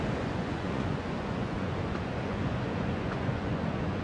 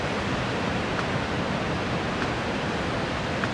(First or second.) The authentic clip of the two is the second